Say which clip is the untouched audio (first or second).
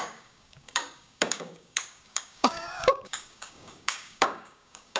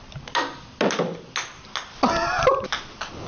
second